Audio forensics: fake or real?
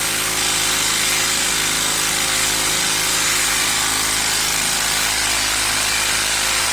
real